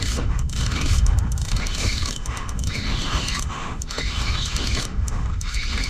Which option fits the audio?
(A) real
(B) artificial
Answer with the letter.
B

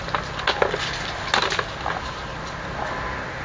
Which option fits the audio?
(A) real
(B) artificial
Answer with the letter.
A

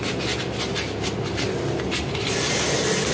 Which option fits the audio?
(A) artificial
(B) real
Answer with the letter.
B